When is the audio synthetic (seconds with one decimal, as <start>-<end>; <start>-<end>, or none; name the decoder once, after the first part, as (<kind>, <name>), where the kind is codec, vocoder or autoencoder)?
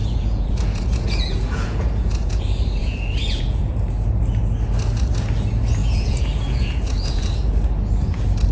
0.0-2.4 (vocoder, Vocos); 2.8-3.7; 5.8-7.5